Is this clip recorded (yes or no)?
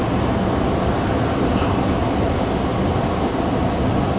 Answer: yes